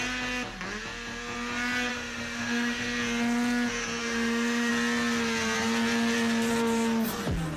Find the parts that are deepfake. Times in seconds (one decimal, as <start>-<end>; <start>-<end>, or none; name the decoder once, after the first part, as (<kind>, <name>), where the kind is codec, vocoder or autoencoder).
1.9-2.8 (autoencoder, DAC-VAE); 4.0-4.7